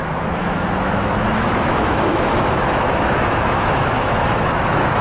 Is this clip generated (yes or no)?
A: yes